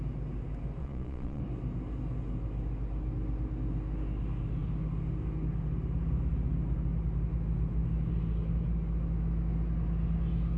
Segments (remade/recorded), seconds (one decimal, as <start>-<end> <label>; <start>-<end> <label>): 0.0-0.8 recorded; 0.8-1.4 remade; 1.4-10.6 recorded